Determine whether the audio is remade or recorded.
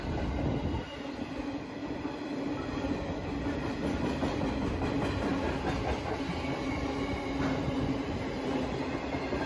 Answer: recorded